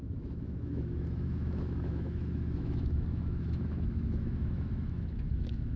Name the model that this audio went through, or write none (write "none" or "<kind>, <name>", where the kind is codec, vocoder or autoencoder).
autoencoder, DAC-VAE